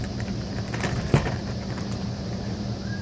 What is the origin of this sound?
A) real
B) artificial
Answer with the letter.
B